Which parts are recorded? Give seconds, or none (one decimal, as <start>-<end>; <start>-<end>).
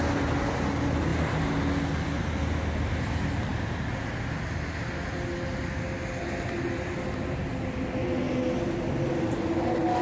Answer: 0.0-10.0